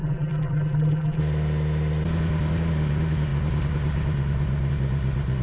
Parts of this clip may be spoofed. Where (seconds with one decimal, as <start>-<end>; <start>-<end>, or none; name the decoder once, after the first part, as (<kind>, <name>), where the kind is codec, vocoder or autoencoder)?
0.0-1.2 (vocoder, BigVGAN v2)